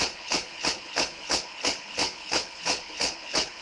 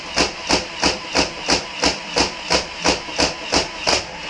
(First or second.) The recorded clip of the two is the second